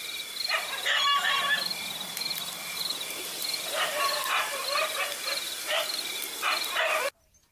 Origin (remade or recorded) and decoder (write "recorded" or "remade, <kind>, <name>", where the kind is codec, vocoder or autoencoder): recorded